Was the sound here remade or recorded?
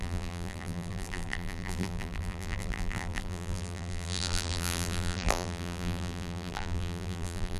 remade